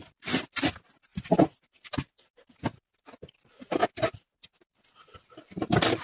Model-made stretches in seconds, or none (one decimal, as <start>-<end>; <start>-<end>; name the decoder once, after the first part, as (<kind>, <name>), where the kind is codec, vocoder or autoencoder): none